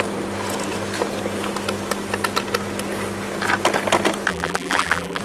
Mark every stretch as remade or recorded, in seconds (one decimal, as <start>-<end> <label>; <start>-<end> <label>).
0.0-4.3 recorded; 4.3-5.2 remade